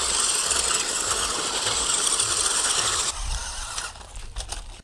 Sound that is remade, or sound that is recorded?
recorded